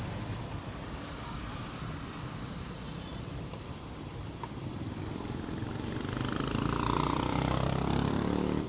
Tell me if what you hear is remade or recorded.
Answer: remade